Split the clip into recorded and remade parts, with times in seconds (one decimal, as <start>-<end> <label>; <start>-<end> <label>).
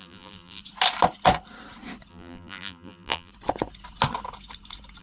0.0-0.6 remade; 0.6-2.1 recorded; 2.1-3.3 remade; 3.3-5.0 recorded